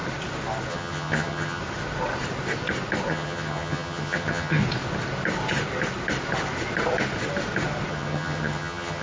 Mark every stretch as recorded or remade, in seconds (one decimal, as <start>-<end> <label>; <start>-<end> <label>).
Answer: 0.0-0.7 recorded; 0.7-1.6 remade; 1.6-3.1 recorded; 3.1-4.6 remade; 4.6-7.9 recorded; 7.9-9.0 remade